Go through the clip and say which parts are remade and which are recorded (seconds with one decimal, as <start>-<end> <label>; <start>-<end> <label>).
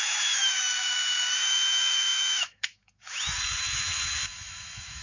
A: 0.0-5.0 remade